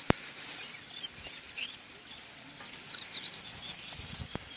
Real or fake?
real